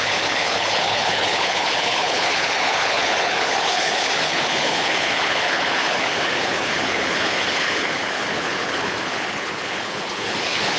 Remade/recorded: remade